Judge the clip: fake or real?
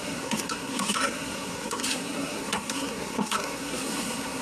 fake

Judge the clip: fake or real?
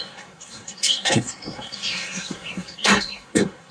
fake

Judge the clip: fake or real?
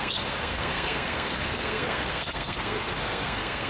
fake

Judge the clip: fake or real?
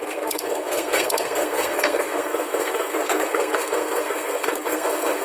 fake